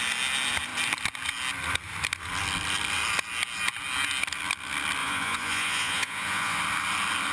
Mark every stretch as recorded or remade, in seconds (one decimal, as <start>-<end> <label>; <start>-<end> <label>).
0.0-5.0 recorded; 5.0-6.6 remade; 6.6-7.3 recorded